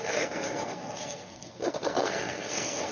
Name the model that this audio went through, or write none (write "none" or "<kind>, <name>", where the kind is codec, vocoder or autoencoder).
codec, SNAC